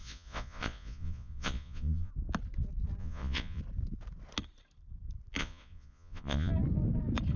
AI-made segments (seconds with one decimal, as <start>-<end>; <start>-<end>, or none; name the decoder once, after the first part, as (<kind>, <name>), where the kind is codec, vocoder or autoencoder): 0.0-2.1 (vocoder, Vocos); 3.0-3.6; 5.4-6.5